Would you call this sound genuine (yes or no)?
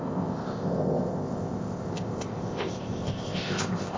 no